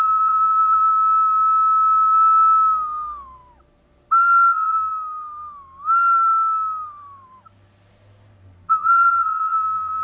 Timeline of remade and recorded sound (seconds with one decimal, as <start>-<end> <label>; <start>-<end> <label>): 0.0-0.9 remade; 0.9-4.2 recorded; 4.2-4.9 remade; 4.9-8.7 recorded; 8.7-10.0 remade